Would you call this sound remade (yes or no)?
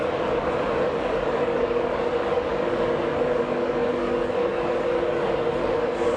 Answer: yes